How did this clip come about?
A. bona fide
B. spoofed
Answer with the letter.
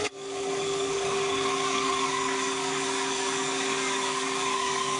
B